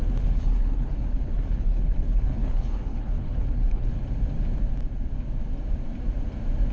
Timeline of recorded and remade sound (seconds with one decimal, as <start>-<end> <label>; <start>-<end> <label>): 0.0-4.0 remade; 4.0-6.7 recorded